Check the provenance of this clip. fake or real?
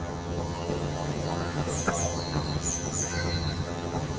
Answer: fake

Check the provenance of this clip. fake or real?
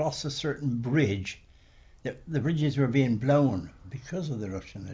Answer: real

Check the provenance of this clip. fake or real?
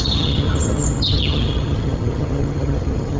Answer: fake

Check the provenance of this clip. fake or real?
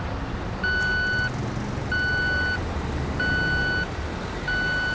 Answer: real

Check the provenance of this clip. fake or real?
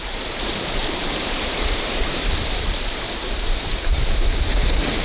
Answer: fake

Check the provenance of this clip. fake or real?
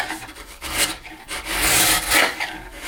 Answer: fake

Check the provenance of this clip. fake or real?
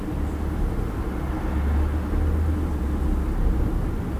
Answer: real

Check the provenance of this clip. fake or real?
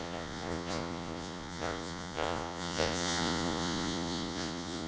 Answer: fake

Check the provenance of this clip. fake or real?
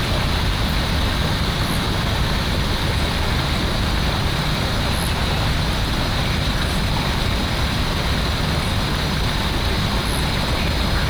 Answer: real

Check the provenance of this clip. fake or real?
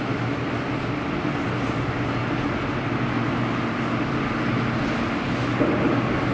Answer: real